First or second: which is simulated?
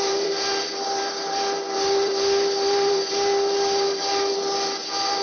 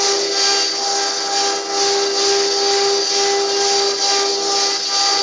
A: first